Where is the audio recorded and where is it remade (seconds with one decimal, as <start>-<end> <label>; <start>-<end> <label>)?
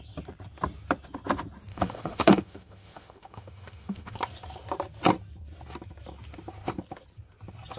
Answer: 0.0-1.7 recorded; 1.7-4.2 remade; 4.2-7.8 recorded